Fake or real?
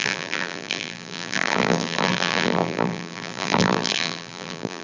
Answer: fake